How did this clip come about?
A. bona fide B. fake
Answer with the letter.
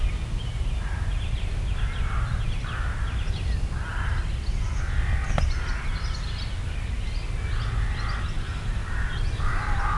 A